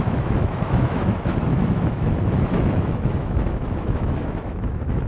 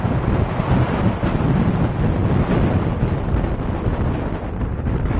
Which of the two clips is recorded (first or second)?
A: second